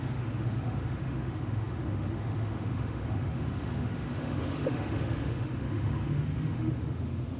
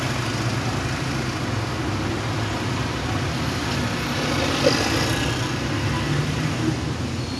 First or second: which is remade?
first